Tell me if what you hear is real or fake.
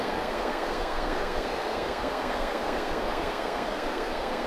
fake